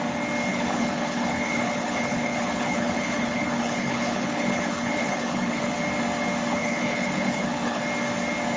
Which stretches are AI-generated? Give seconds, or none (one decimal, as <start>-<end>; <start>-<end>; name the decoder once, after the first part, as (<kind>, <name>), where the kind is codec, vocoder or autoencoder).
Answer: 0.5-5.7 (codec, HILCodec); 6.5-7.8